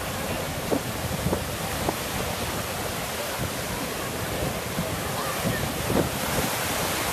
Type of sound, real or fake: real